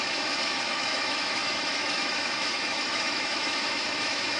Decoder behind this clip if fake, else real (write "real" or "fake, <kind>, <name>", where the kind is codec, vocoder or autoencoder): fake, autoencoder, DAC-VAE